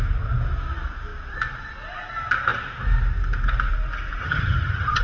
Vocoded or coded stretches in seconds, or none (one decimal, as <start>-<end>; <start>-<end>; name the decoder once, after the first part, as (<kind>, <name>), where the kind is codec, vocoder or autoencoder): 4.2-5.0 (vocoder, HiFi-GAN)